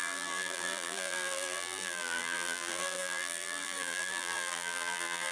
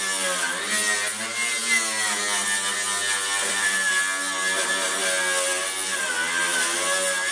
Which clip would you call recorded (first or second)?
second